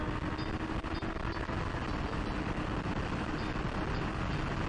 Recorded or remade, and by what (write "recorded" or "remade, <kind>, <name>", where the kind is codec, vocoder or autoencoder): recorded